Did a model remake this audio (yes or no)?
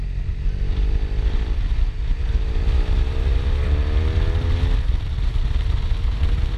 no